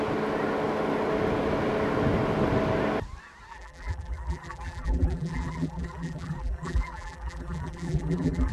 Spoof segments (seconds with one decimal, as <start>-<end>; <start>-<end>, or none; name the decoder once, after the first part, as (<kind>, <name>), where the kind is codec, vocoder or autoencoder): 3.5-8.5 (vocoder, BigVGAN v2)